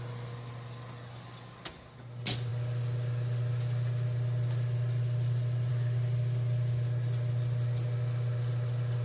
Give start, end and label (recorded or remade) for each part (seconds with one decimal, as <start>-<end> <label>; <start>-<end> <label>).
0.0-9.0 recorded